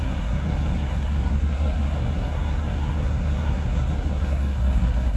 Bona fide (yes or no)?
no